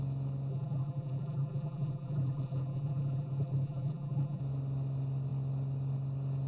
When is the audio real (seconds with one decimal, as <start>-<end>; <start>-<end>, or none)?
0.0-0.5; 4.4-6.5